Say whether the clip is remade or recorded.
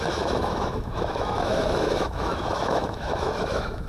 remade